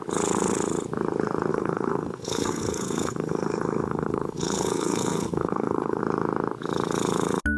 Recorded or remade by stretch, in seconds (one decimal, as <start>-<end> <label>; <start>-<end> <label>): 0.0-1.5 recorded; 1.5-6.0 remade; 6.0-7.6 recorded